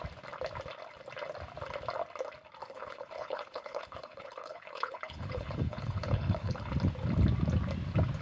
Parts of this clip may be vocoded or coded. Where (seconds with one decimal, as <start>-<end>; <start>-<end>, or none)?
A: 2.6-6.7